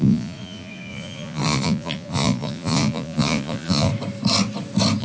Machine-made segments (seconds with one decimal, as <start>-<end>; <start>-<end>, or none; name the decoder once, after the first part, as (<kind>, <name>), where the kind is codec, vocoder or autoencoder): 0.0-3.9 (vocoder, Vocos)